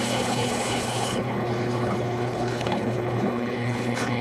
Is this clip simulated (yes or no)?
yes